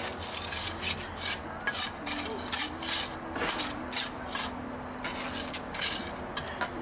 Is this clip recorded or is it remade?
recorded